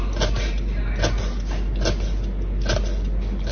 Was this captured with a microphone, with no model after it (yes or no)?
yes